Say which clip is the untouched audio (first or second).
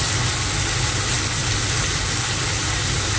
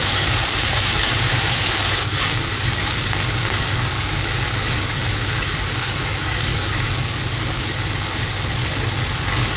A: first